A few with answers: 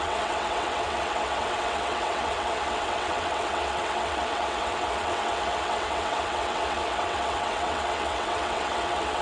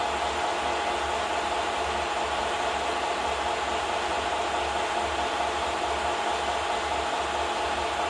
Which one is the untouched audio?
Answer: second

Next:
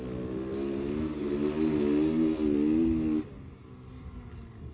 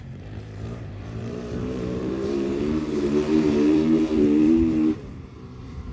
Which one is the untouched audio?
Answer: first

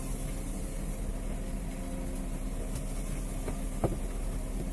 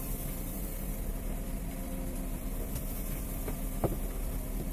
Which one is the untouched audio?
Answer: first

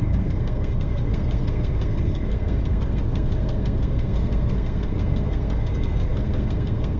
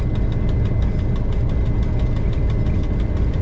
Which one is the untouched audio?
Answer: second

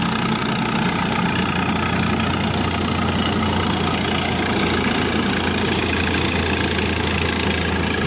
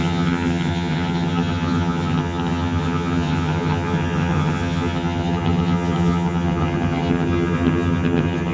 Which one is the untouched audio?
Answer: first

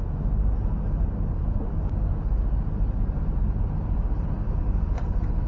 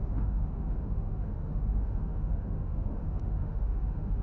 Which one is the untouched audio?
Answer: first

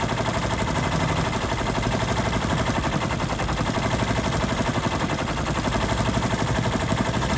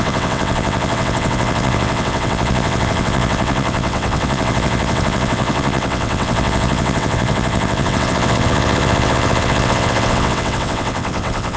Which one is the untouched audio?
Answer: first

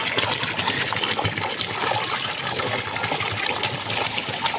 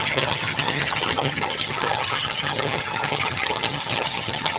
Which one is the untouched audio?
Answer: first